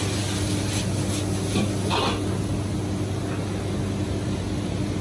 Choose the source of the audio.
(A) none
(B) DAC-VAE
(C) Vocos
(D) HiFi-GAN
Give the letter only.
A